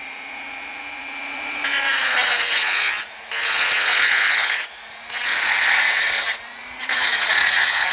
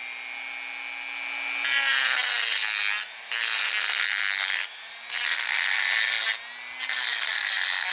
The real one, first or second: second